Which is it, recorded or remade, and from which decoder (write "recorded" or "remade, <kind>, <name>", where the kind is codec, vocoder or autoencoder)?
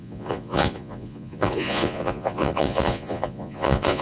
remade, vocoder, Vocos